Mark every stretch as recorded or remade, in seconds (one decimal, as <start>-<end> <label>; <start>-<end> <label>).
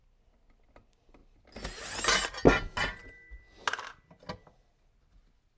0.0-5.6 recorded